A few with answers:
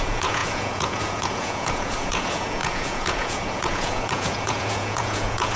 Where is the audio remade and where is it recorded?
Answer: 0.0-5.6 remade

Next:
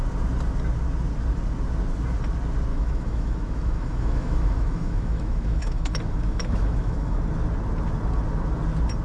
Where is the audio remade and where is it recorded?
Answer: 0.0-2.7 recorded; 2.7-7.2 remade; 7.2-9.0 recorded

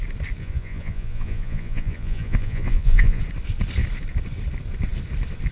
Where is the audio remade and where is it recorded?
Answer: 0.0-0.4 recorded; 0.4-3.2 remade; 3.2-5.5 recorded

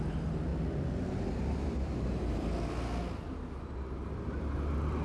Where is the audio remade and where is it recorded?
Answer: 0.0-5.0 recorded